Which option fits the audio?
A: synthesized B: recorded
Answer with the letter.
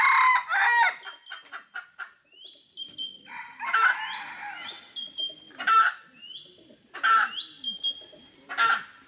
B